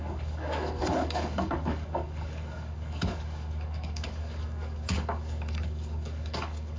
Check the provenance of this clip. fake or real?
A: fake